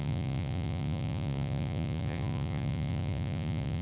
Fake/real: fake